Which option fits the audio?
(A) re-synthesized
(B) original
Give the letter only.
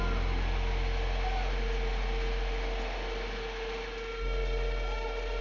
B